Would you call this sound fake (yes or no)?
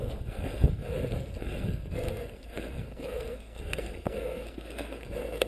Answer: yes